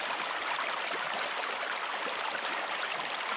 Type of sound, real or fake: fake